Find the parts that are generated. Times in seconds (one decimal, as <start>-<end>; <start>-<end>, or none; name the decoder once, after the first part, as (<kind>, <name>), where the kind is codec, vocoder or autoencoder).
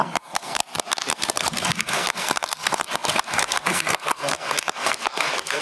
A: 0.0-0.6 (codec, SNAC); 1.1-5.6